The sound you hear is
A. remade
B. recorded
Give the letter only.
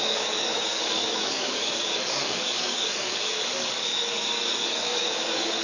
A